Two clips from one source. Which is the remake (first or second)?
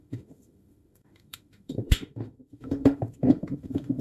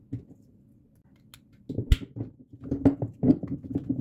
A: first